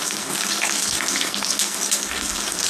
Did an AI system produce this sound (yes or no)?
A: yes